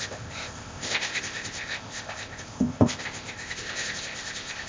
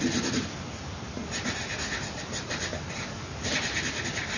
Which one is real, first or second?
second